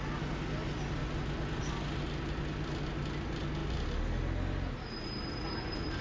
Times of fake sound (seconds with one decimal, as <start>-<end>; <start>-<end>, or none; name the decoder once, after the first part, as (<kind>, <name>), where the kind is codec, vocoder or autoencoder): none